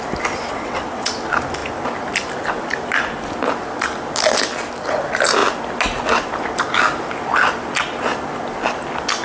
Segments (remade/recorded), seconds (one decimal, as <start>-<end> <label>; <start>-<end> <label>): 0.0-0.5 recorded; 0.5-1.1 remade; 1.1-9.2 recorded